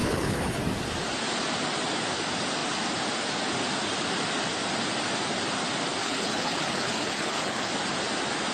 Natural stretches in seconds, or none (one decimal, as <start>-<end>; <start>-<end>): 0.6-6.0; 7.7-8.5

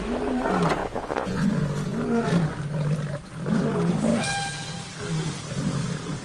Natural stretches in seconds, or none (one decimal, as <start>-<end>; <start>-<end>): 0.0-0.8; 1.5-6.2

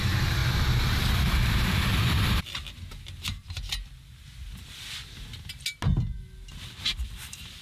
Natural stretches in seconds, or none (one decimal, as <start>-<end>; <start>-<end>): 0.4-1.5; 1.9-6.5

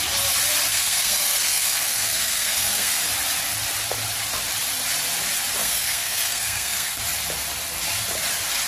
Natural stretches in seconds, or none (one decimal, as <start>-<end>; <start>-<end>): 0.0-0.7; 3.1-5.6; 7.0-8.7

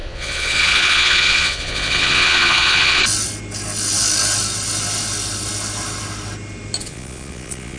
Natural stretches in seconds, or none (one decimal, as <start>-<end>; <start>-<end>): 3.0-6.8